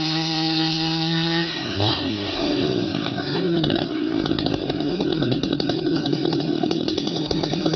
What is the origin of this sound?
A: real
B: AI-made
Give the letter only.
B